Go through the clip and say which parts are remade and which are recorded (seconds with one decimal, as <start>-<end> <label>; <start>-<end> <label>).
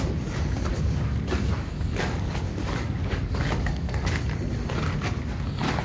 0.0-0.7 recorded; 0.7-4.2 remade; 4.2-5.8 recorded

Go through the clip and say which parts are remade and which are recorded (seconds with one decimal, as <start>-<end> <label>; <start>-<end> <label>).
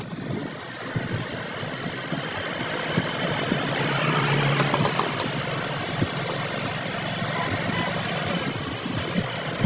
0.0-9.7 recorded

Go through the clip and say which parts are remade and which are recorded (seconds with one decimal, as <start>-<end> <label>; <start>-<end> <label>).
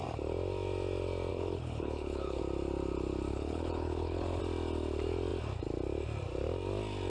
0.0-1.3 recorded; 1.3-2.4 remade; 2.4-3.3 recorded; 3.3-4.4 remade; 4.4-7.1 recorded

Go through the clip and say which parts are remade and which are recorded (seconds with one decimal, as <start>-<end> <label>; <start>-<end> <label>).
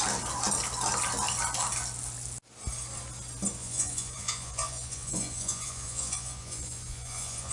0.0-3.6 recorded; 3.6-7.5 remade